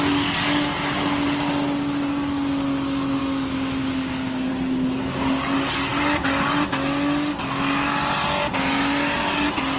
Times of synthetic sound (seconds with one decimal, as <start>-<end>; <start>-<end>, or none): 3.2-4.5